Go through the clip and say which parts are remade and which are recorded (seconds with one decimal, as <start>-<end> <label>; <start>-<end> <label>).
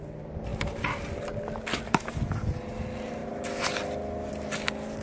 0.0-5.0 recorded